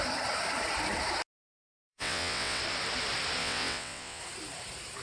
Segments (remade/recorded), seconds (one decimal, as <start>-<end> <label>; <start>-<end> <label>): 0.0-1.4 recorded; 1.4-2.6 remade; 2.6-3.4 recorded; 3.4-4.2 remade; 4.2-5.0 recorded